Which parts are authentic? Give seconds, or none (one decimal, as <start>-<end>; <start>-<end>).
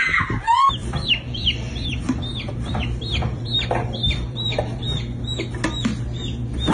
0.0-0.8; 4.8-6.7